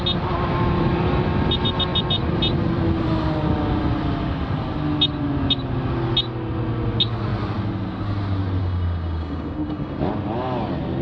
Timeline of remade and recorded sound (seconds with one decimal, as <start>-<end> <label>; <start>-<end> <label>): 0.0-8.6 recorded; 8.6-10.0 remade; 10.0-11.0 recorded